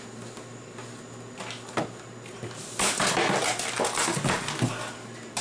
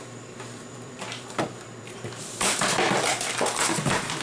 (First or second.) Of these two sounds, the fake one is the second